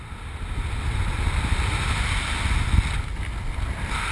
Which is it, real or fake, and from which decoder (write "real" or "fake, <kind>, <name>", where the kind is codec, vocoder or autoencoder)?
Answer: real